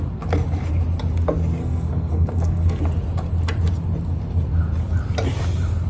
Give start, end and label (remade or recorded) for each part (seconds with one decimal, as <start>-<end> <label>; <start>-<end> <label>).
0.0-1.6 recorded; 1.6-2.8 remade; 2.8-5.9 recorded